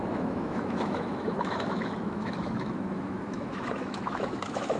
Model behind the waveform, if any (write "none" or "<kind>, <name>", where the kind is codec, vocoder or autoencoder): autoencoder, DAC-VAE